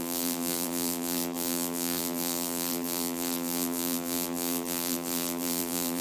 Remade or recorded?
remade